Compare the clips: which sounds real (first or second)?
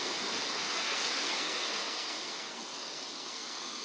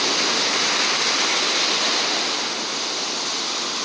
second